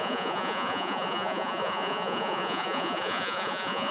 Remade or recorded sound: remade